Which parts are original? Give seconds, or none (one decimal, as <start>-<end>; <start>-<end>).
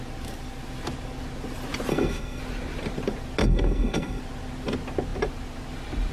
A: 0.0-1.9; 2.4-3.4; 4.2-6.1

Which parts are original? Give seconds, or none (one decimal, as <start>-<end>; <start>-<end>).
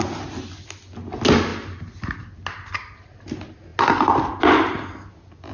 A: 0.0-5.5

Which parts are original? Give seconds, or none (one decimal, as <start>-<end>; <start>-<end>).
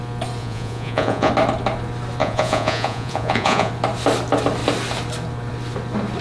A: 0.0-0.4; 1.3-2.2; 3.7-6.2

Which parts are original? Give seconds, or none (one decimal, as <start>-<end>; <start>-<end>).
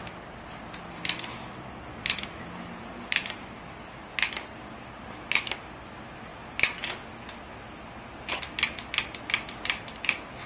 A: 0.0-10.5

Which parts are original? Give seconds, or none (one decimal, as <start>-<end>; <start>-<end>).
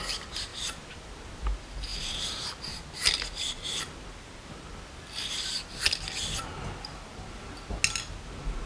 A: 0.0-0.5; 1.3-8.7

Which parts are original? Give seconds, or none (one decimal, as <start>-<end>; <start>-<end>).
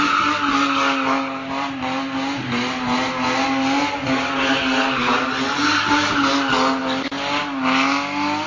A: 0.0-8.5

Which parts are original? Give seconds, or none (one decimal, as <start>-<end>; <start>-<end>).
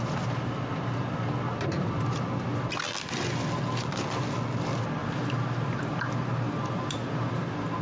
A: 0.0-5.0